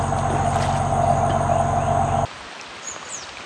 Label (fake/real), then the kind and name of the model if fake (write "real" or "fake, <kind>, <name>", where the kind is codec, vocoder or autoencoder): real